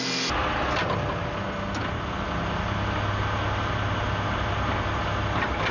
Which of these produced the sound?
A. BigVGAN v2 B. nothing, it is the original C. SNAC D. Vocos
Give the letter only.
B